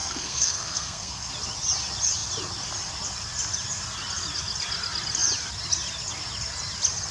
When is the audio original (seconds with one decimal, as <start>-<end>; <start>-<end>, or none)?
1.3-7.1